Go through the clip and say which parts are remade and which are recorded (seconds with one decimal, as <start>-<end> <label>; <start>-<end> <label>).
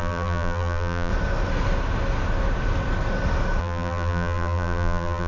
0.0-1.1 remade; 1.1-3.6 recorded; 3.6-5.3 remade